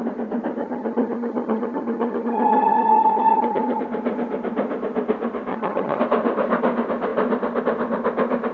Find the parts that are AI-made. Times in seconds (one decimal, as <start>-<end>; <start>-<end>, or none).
0.6-3.8; 5.5-6.0